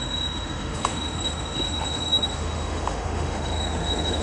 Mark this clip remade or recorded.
remade